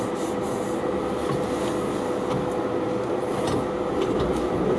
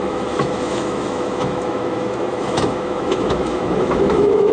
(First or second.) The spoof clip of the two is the second